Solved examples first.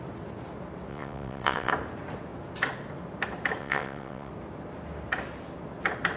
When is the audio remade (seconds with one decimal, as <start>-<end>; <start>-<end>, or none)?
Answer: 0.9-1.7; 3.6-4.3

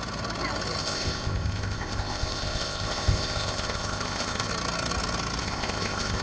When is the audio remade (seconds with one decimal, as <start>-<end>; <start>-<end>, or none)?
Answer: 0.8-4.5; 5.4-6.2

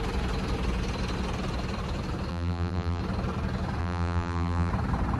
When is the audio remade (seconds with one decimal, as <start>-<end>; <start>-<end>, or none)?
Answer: 2.3-3.0; 3.8-4.7